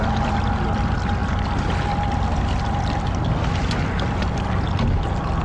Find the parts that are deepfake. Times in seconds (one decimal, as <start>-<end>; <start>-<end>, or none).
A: none